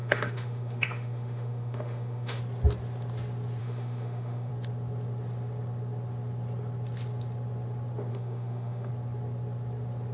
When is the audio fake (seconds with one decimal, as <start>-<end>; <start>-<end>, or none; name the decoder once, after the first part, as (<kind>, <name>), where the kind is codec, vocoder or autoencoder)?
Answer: 0.0-2.4 (autoencoder, DAC-VAE); 3.6-4.5; 8.1-8.9